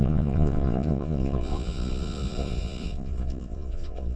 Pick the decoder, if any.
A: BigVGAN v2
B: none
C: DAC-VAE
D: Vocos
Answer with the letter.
D